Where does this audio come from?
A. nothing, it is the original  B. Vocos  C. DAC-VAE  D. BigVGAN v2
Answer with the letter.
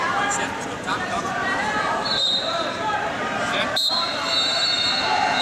D